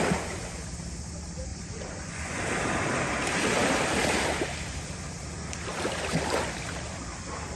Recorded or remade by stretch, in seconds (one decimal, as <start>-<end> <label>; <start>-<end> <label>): 0.0-1.5 recorded; 1.5-2.4 remade; 2.4-7.6 recorded